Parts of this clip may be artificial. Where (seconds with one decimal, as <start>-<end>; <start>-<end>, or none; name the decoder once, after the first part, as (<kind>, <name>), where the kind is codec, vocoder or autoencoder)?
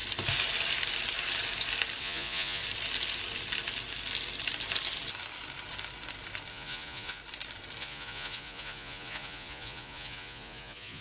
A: 2.0-2.6 (vocoder, Vocos); 6.5-7.2; 7.8-11.0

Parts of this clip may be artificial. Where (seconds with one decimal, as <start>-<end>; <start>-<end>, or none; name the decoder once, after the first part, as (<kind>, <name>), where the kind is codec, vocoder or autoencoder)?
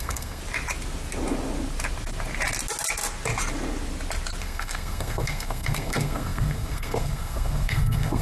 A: 0.0-0.4 (codec, SNAC); 4.4-8.2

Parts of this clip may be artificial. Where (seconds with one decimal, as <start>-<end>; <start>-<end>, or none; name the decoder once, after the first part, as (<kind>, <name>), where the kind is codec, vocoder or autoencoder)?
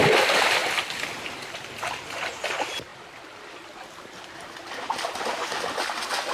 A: none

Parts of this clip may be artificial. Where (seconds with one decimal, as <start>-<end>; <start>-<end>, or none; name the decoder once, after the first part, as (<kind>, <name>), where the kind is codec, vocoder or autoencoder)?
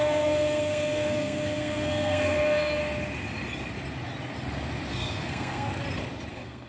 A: 0.0-2.8 (codec, SNAC); 4.9-5.7; 6.3-6.7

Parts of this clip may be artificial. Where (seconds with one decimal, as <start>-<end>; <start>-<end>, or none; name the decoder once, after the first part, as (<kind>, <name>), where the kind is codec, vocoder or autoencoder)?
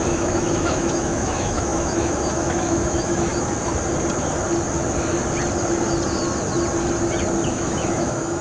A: 0.0-3.3 (autoencoder, DAC-VAE); 7.5-8.4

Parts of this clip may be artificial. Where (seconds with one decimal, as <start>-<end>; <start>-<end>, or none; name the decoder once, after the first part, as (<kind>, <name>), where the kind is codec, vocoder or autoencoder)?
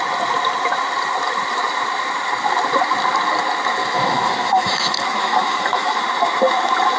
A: 3.8-6.0 (autoencoder, DAC-VAE)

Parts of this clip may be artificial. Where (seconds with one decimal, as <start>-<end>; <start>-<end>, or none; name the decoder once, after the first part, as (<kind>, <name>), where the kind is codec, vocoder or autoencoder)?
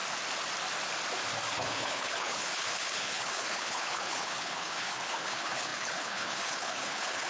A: 1.5-7.3 (codec, HILCodec)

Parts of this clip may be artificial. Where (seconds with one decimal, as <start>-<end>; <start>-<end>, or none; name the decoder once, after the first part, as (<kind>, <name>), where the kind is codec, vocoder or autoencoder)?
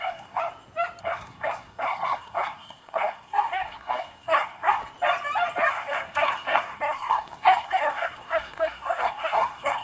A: 0.0-0.4 (codec, SNAC); 1.0-4.8; 5.7-9.8